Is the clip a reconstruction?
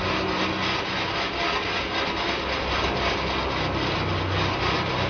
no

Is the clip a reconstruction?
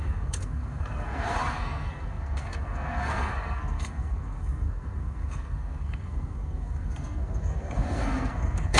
yes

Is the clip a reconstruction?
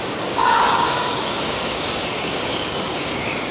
yes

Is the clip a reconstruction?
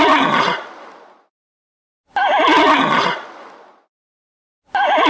no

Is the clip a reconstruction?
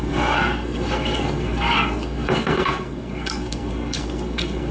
yes